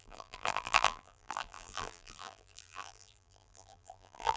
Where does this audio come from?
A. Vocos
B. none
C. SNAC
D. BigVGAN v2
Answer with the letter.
D